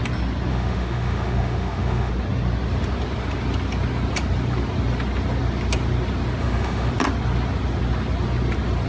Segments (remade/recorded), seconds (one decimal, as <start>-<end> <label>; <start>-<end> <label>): 0.0-0.5 recorded; 0.5-2.1 remade; 2.1-6.4 recorded; 6.4-6.9 remade; 6.9-8.9 recorded